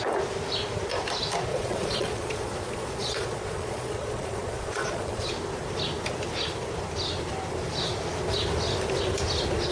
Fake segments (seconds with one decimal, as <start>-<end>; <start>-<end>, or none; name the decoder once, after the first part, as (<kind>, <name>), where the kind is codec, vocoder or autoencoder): 1.5-5.3 (vocoder, Vocos)

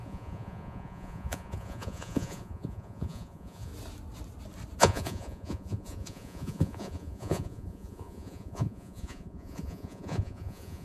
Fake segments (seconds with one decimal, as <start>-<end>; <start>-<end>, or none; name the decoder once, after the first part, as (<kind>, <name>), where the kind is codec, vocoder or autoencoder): 0.0-3.7 (vocoder, Vocos); 4.8-10.8

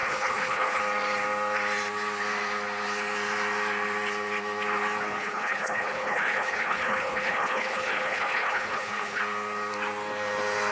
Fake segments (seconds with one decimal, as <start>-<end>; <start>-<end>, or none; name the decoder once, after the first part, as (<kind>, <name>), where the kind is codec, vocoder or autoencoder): 0.0-0.8 (codec, HILCodec); 5.2-9.2

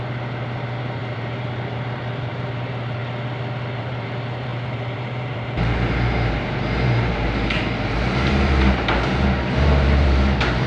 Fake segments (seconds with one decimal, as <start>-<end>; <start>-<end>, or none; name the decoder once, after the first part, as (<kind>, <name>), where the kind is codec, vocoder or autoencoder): 0.0-3.0 (vocoder, BigVGAN v2); 3.8-10.7

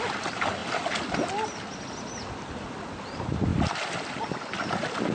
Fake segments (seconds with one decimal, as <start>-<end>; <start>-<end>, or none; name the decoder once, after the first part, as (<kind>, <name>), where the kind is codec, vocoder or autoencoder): none